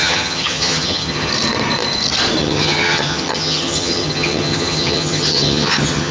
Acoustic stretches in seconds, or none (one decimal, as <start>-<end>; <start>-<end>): 1.3-2.4